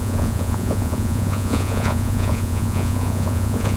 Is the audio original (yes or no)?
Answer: no